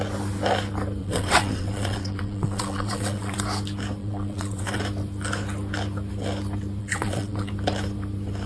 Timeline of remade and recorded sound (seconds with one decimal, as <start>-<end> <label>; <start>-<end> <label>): 0.0-1.0 recorded; 1.0-3.4 remade; 3.4-4.0 recorded; 4.0-4.8 remade; 4.8-6.8 recorded; 6.8-7.5 remade; 7.5-8.5 recorded